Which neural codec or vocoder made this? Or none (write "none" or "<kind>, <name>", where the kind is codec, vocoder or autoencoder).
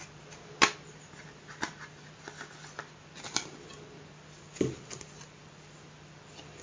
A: none